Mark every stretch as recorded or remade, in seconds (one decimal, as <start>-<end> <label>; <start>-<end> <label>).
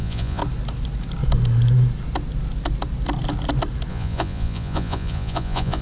0.0-0.4 remade; 0.4-3.9 recorded; 3.9-5.8 remade